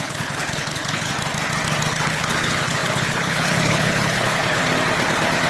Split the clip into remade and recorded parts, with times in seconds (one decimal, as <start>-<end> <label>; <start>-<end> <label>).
0.0-1.1 remade; 1.1-1.9 recorded; 1.9-4.6 remade; 4.6-5.5 recorded